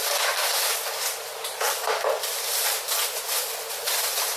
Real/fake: real